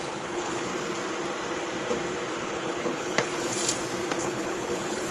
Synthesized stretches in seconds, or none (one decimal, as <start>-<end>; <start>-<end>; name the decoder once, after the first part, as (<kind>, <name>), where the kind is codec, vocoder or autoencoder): 0.0-0.7 (codec, HILCodec); 2.4-3.6; 4.2-5.1